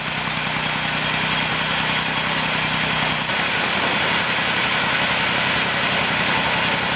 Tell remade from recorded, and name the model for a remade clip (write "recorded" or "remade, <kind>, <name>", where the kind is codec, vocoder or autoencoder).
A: recorded